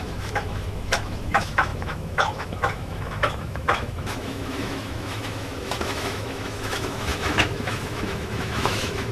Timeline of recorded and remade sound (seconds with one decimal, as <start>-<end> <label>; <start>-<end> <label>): 0.0-9.1 remade

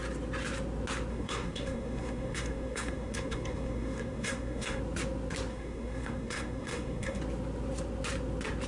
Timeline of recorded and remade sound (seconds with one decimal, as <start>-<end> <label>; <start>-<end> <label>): 0.0-1.1 recorded; 1.1-4.8 remade; 4.8-5.5 recorded; 5.5-7.2 remade; 7.2-8.7 recorded

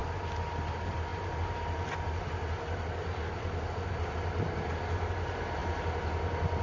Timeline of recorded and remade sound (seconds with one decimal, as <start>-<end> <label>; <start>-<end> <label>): 0.0-6.6 recorded

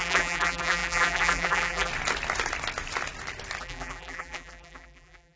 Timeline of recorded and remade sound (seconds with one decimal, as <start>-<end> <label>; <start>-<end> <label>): 0.0-1.9 remade; 1.9-3.6 recorded; 3.6-5.4 remade

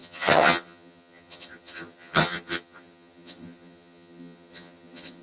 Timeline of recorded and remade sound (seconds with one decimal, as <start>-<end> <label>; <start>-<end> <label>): 0.0-5.2 remade

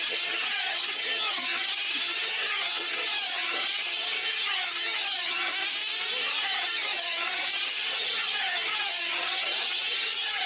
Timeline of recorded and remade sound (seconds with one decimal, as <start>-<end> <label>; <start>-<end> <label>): 0.0-5.5 remade; 5.5-6.2 recorded; 6.2-10.5 remade

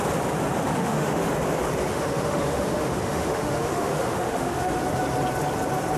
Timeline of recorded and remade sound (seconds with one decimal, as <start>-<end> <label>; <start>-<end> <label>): 0.0-0.7 recorded; 0.7-1.3 remade; 1.3-1.9 recorded; 1.9-4.8 remade; 4.8-6.0 recorded